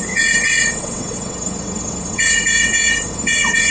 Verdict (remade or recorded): remade